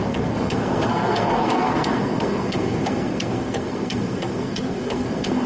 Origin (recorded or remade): remade